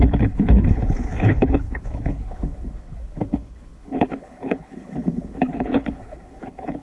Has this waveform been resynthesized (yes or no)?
yes